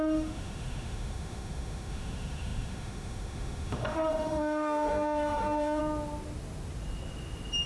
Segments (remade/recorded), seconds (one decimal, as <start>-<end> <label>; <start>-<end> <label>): 0.0-5.8 remade; 5.8-7.7 recorded